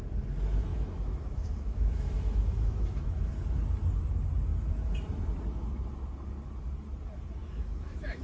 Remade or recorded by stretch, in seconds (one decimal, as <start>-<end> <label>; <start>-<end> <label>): 0.0-0.7 recorded; 0.7-3.3 remade; 3.3-7.4 recorded; 7.4-8.2 remade